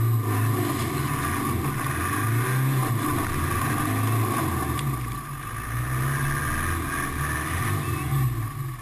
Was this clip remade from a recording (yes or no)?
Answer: no